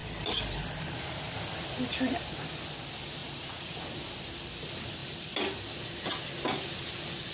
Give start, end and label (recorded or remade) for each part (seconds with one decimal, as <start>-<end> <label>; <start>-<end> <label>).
0.0-3.2 recorded; 3.2-3.8 remade; 3.8-7.3 recorded